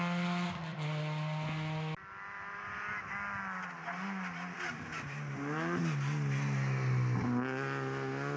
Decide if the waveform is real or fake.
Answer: real